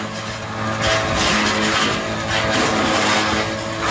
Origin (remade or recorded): recorded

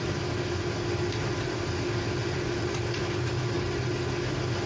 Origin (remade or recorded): recorded